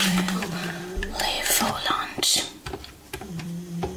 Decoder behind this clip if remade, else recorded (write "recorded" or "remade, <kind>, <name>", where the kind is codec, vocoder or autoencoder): remade, vocoder, BigVGAN v2